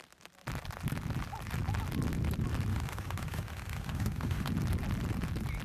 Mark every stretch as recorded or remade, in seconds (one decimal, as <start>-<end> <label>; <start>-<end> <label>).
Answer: 0.0-2.7 recorded; 2.7-4.5 remade; 4.5-5.6 recorded